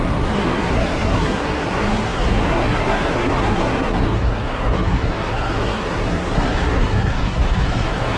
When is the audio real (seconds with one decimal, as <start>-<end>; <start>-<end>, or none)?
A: none